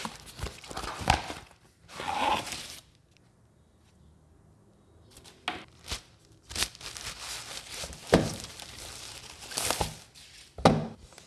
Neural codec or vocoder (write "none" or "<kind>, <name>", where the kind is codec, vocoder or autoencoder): none